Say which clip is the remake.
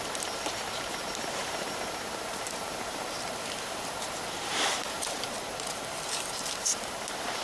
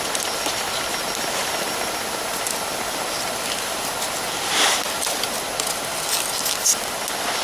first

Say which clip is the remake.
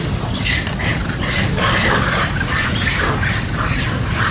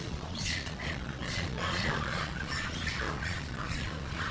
second